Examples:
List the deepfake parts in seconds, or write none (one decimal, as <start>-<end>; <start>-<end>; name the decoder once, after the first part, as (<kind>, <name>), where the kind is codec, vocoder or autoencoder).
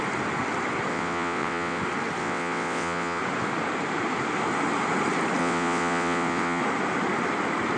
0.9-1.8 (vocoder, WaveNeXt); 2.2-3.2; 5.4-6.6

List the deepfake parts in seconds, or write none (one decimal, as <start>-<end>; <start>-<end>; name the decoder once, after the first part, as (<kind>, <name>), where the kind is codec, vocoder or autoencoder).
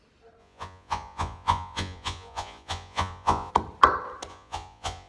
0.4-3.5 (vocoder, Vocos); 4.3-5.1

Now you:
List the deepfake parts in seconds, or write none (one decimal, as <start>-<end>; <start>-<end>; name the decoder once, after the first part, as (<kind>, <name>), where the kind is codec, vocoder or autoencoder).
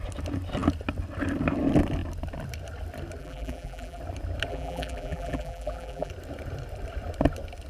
3.2-4.0 (vocoder, BigVGAN v2); 4.5-6.1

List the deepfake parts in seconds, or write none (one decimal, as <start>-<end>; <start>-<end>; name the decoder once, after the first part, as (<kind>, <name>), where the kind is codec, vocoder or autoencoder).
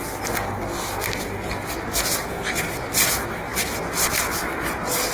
none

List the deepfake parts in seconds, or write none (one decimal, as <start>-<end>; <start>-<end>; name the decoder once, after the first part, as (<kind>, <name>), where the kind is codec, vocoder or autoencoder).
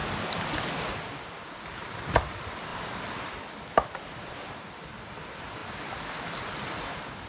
1.8-2.7 (vocoder, BigVGAN v2); 4.6-5.6; 6.3-7.3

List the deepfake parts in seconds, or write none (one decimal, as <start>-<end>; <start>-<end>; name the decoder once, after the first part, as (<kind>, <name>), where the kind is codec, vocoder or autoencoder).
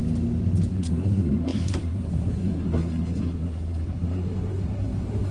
0.7-5.3 (codec, SNAC)